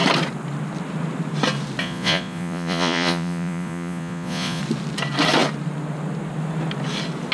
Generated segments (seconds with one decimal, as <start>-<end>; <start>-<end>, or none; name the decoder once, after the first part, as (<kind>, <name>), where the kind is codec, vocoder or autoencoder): 1.8-4.6 (vocoder, Vocos)